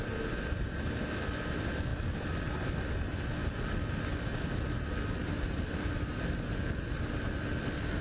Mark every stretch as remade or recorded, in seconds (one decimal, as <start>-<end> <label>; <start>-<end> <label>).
0.0-8.0 recorded